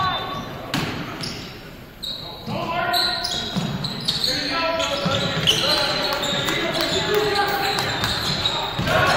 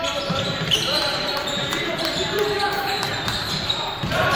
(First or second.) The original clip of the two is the first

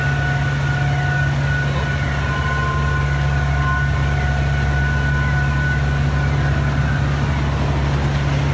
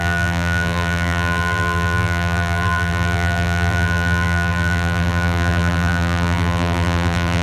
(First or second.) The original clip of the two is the first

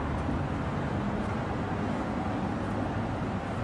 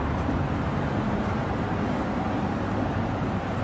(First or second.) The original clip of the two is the first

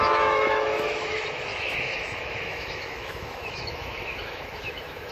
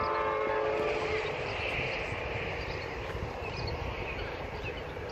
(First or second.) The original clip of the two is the second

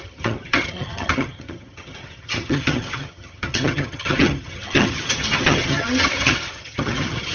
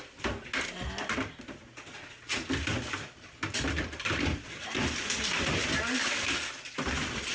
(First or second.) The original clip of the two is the second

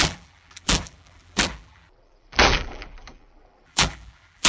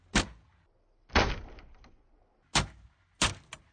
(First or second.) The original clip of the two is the second